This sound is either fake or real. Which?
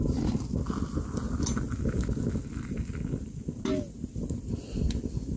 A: real